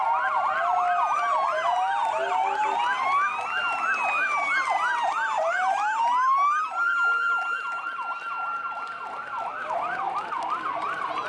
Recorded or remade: recorded